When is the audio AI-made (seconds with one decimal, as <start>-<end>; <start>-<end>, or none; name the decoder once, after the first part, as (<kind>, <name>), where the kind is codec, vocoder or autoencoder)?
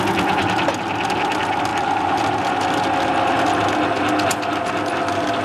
none